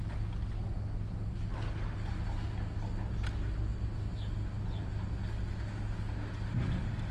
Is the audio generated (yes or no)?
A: no